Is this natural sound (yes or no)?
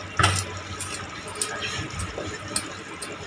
yes